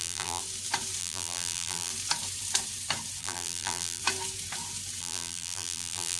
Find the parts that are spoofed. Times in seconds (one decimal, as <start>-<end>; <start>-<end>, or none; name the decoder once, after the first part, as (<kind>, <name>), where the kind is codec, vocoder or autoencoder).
0.0-0.4 (vocoder, BigVGAN v2); 1.0-1.9; 3.2-4.0; 5.0-6.2